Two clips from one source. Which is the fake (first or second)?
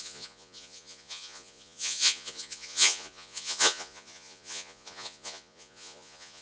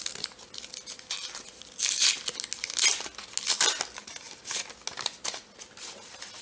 first